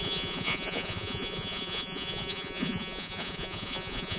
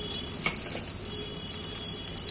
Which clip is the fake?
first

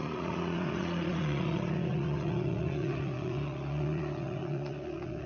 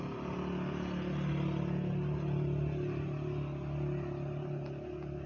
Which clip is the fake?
first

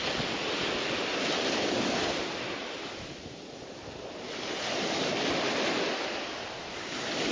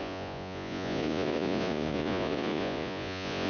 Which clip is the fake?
second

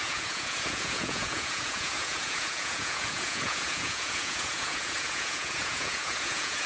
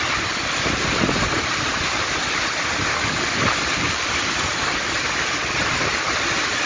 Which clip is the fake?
first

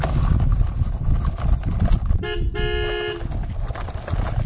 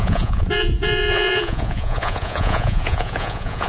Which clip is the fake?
second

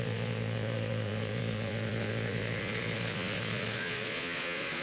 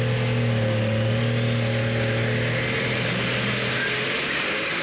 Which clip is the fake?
first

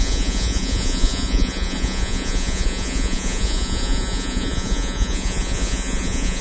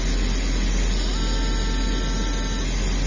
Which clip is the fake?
first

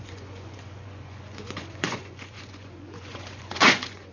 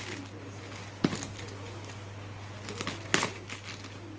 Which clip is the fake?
first